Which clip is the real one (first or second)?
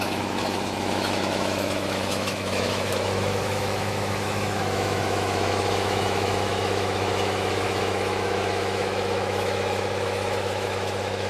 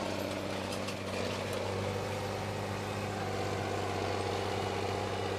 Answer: second